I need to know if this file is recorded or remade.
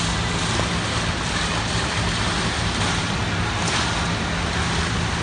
recorded